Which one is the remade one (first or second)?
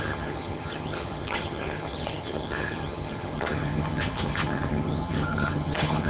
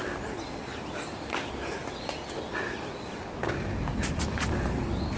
first